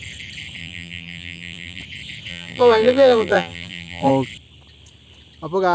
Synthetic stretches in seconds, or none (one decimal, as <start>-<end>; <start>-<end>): 0.6-1.8; 2.3-4.1